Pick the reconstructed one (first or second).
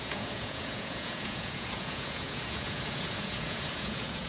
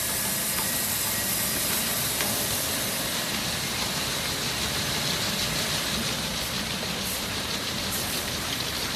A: first